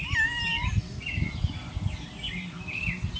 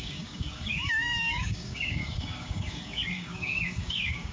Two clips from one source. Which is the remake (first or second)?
second